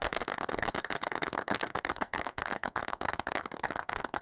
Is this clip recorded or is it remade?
remade